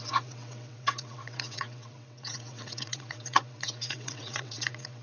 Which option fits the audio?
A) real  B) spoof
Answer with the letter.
B